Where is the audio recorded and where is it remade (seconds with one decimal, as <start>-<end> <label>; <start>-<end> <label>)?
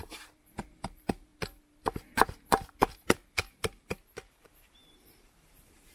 0.0-1.3 remade; 1.3-3.5 recorded; 3.5-5.9 remade